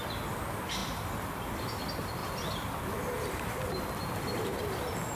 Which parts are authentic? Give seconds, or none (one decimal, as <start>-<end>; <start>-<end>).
0.0-5.1